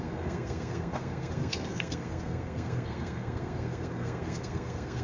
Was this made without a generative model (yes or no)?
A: no